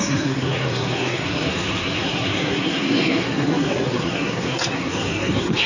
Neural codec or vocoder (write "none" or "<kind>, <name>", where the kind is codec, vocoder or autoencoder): codec, SNAC